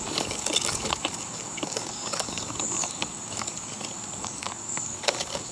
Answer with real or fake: fake